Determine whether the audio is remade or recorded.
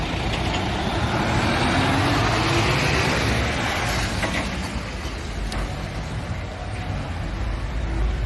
recorded